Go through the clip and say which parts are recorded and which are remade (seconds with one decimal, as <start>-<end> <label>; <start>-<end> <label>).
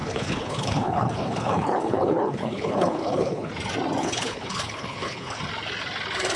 0.0-3.5 remade; 3.5-4.0 recorded; 4.0-5.4 remade; 5.4-6.4 recorded